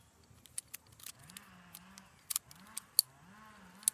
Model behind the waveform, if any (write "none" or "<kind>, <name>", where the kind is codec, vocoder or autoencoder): none